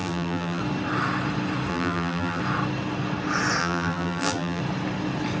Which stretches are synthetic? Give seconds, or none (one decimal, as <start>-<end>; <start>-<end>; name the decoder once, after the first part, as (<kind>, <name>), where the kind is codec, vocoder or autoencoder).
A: 0.0-0.6 (vocoder, BigVGAN v2); 1.7-2.4; 3.6-4.6